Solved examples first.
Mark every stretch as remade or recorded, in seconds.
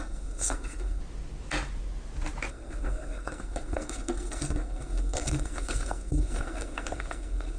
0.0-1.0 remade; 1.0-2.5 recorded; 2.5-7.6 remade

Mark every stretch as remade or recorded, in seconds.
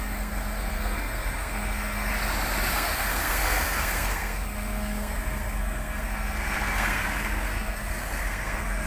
0.0-2.1 remade; 2.1-2.7 recorded; 2.7-8.9 remade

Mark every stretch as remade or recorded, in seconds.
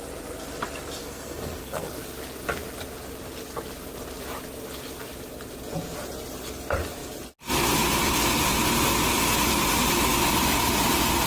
0.0-1.0 recorded; 1.0-1.9 remade; 1.9-11.3 recorded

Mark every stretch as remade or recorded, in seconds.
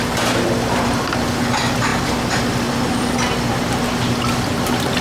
0.0-5.0 recorded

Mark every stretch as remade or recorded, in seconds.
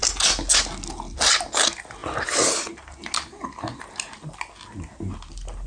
0.0-5.7 recorded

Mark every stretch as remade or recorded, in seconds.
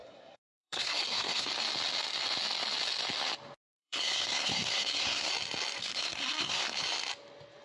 0.0-1.5 remade; 1.5-3.7 recorded; 3.7-5.3 remade; 5.3-5.8 recorded; 5.8-6.8 remade; 6.8-7.6 recorded